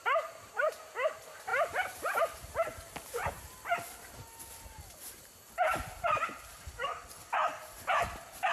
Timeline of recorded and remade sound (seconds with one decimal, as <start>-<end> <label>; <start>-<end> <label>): 0.0-8.5 recorded